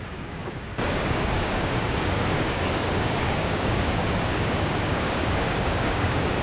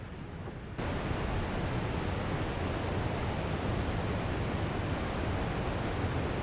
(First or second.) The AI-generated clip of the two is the first